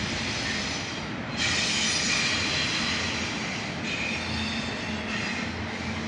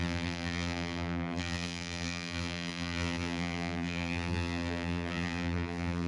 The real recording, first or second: first